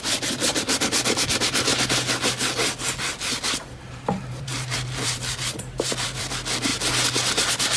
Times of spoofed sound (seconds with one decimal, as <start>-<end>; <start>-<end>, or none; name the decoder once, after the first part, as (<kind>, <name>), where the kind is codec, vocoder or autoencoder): 0.0-1.7 (vocoder, BigVGAN v2); 4.1-6.7